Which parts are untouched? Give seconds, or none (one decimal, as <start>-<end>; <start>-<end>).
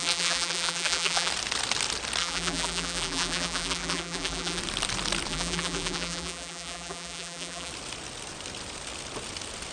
1.3-2.2; 4.6-5.3; 7.7-9.7